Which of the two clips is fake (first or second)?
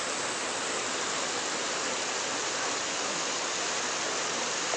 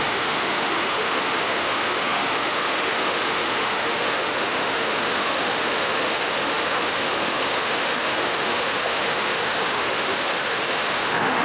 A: second